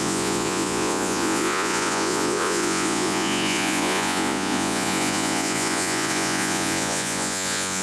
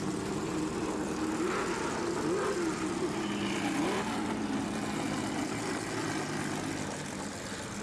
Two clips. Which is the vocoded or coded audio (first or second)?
first